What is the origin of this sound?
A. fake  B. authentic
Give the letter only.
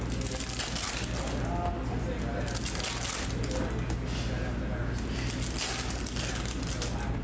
B